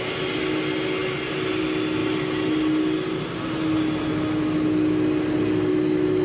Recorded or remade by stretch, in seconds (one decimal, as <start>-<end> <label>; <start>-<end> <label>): 0.0-6.2 recorded